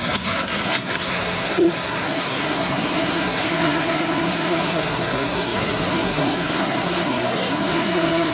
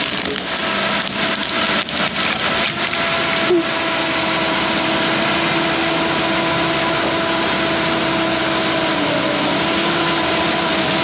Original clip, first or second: second